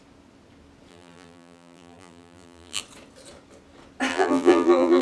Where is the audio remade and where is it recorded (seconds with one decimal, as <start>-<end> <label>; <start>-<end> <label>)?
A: 0.0-0.9 recorded; 0.9-2.8 remade; 2.8-4.1 recorded; 4.1-5.0 remade